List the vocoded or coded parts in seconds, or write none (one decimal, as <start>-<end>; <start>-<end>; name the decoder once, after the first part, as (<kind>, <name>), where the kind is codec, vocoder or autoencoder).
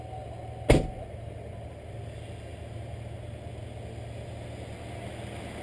none